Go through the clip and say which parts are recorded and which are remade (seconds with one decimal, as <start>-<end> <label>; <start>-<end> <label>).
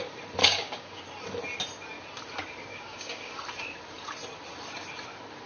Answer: 0.0-0.4 recorded; 0.4-1.0 remade; 1.0-2.7 recorded; 2.7-3.3 remade; 3.3-5.5 recorded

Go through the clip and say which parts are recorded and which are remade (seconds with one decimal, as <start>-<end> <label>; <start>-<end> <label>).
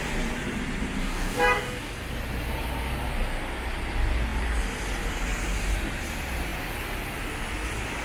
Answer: 0.0-1.0 recorded; 1.0-1.9 remade; 1.9-8.0 recorded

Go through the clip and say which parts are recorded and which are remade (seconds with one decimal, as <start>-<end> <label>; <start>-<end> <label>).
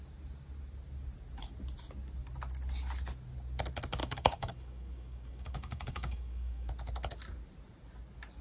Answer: 0.0-4.0 recorded; 4.0-6.7 remade; 6.7-8.4 recorded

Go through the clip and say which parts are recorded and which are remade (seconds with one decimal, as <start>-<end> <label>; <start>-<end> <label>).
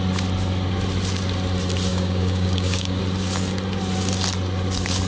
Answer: 0.0-1.9 recorded; 1.9-3.0 remade; 3.0-5.1 recorded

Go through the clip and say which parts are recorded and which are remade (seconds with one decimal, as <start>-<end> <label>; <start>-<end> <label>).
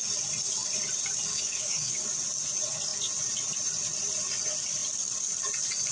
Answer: 0.0-1.3 recorded; 1.3-2.0 remade; 2.0-5.9 recorded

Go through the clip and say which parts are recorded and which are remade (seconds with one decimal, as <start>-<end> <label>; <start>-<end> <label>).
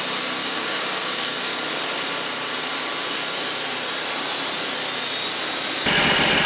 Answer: 0.0-0.4 recorded; 0.4-1.4 remade; 1.4-6.5 recorded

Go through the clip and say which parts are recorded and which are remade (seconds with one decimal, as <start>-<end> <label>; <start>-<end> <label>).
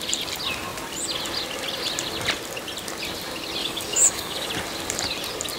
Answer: 0.0-3.6 recorded; 3.6-4.5 remade; 4.5-5.6 recorded